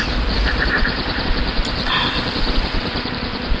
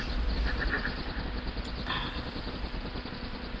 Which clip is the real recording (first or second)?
second